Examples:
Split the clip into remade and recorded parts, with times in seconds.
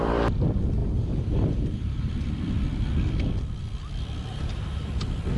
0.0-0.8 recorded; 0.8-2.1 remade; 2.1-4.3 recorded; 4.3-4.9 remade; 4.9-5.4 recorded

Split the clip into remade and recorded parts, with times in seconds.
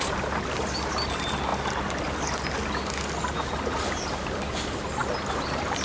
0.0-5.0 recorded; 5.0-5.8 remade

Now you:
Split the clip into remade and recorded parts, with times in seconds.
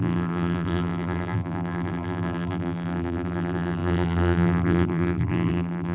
0.0-5.9 remade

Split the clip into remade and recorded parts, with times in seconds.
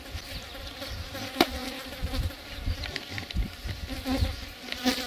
0.0-5.1 remade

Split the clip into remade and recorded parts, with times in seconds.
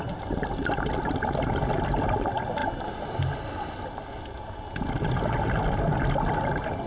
0.0-6.9 recorded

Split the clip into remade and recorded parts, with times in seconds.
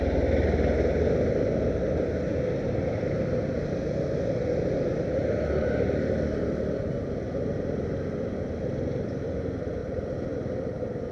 0.0-11.1 recorded